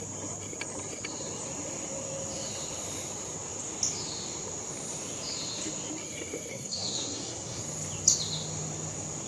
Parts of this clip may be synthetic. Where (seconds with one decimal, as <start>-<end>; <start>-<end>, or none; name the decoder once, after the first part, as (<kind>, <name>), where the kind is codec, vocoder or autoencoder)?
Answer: 6.5-7.6 (codec, SNAC)